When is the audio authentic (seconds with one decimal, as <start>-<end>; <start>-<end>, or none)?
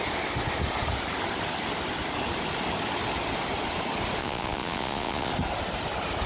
0.0-4.2; 5.3-6.3